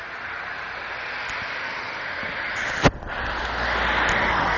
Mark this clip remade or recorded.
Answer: recorded